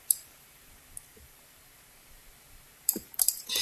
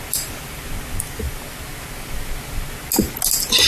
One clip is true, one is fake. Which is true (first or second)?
second